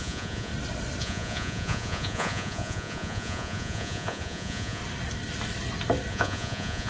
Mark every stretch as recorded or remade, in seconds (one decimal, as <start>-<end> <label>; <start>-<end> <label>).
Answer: 0.0-0.5 remade; 0.5-1.0 recorded; 1.0-4.8 remade; 4.8-6.1 recorded; 6.1-6.9 remade

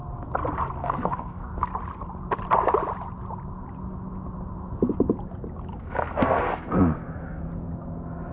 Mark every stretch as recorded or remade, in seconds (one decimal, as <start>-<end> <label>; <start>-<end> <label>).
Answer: 0.0-0.8 recorded; 0.8-1.5 remade; 1.5-5.7 recorded; 5.7-7.4 remade; 7.4-8.3 recorded

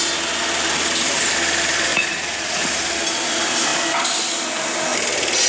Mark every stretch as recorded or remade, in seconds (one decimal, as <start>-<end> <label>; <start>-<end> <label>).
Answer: 0.0-1.9 recorded; 1.9-2.7 remade; 2.7-5.5 recorded

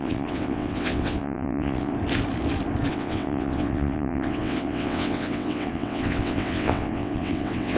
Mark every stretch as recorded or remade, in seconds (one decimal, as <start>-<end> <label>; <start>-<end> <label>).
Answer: 0.0-1.9 remade; 1.9-2.9 recorded; 2.9-7.8 remade

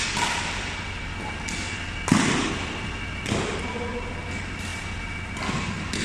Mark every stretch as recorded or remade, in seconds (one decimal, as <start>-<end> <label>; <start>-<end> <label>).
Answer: 0.0-6.0 recorded

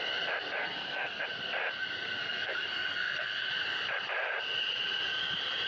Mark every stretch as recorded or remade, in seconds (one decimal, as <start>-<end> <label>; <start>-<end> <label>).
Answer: 0.0-0.6 recorded; 0.6-1.2 remade; 1.2-2.2 recorded; 2.2-3.5 remade; 3.5-5.7 recorded